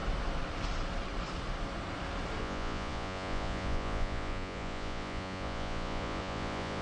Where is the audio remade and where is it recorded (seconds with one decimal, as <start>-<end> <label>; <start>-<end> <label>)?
0.0-2.4 recorded; 2.4-6.8 remade